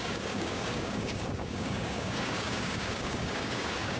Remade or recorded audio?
remade